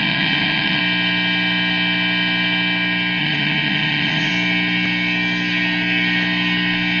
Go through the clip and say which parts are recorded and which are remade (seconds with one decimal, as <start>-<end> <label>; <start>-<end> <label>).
0.0-0.8 remade; 0.8-3.2 recorded; 3.2-4.3 remade; 4.3-7.0 recorded